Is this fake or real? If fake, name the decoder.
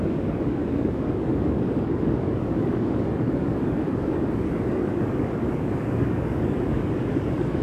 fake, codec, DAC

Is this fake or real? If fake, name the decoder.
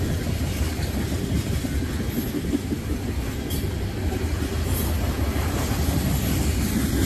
real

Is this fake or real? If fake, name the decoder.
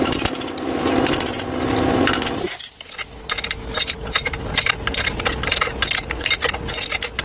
real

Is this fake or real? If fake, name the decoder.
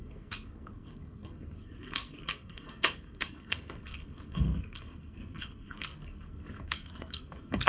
fake, codec, SNAC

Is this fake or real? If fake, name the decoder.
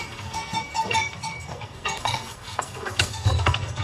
fake, codec, SNAC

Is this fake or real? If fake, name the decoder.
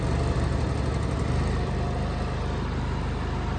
real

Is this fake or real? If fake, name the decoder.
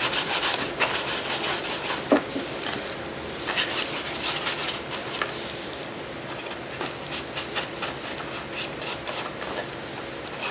real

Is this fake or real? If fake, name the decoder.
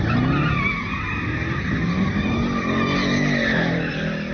real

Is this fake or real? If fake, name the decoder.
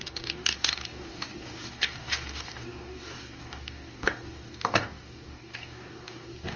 fake, codec, DAC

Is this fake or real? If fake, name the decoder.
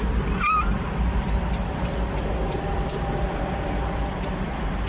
real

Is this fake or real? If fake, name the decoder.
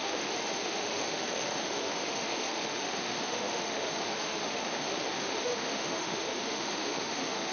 fake, autoencoder, DAC-VAE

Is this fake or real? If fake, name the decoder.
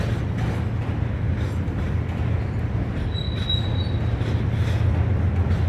real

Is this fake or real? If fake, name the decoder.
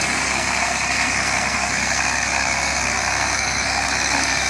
fake, codec, SNAC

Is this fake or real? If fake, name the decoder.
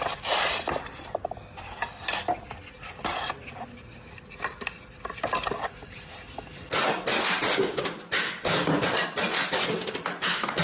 real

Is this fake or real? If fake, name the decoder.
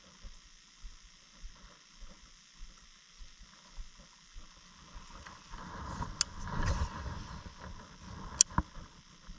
real